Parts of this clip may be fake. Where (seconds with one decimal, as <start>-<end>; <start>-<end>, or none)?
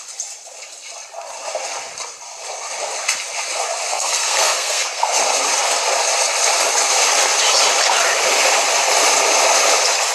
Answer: 3.9-5.2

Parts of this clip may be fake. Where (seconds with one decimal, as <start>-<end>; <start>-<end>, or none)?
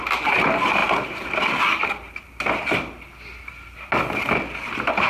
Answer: none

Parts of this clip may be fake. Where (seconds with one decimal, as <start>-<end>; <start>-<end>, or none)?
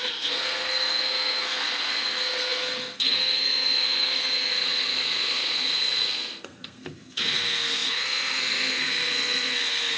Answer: 0.0-10.0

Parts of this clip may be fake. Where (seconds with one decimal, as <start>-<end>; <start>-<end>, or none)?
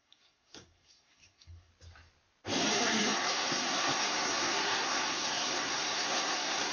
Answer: 0.0-1.7; 2.7-6.7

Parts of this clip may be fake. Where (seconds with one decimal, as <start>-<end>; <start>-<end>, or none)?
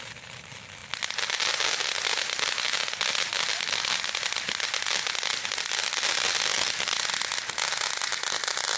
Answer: none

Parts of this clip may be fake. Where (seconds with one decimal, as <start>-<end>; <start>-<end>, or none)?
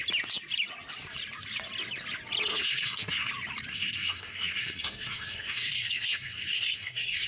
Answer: 2.5-3.3; 3.7-7.3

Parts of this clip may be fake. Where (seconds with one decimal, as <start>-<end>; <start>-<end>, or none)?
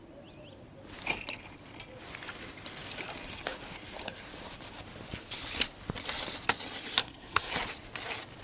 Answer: 7.0-7.5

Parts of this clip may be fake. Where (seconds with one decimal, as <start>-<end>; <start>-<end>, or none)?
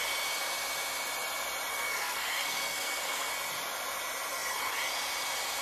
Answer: 1.7-3.3